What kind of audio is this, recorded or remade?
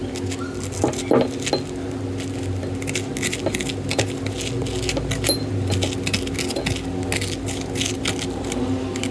recorded